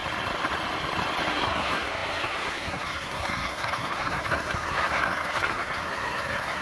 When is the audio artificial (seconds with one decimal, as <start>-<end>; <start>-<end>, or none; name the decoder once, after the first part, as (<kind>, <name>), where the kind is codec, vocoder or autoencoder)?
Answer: 1.3-6.6 (codec, SNAC)